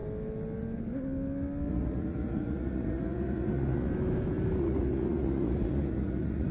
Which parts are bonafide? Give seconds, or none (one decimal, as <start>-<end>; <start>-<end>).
0.0-1.7; 3.9-4.6